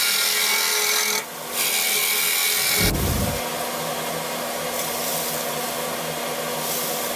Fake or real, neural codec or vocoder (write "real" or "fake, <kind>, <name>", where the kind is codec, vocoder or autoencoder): real